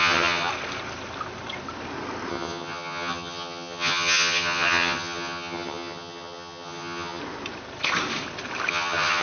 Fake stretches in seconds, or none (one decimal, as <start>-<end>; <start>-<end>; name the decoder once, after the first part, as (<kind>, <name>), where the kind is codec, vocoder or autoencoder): 0.0-0.5 (vocoder, HiFi-GAN); 2.3-7.2; 8.7-9.2